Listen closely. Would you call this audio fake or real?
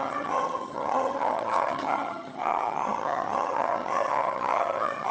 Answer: fake